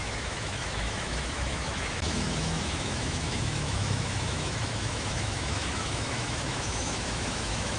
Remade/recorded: remade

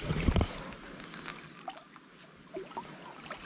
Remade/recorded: recorded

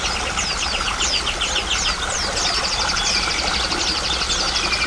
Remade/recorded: recorded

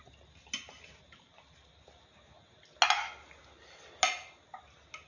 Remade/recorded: recorded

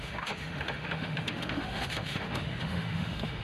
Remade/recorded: remade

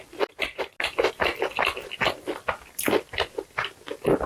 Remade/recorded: recorded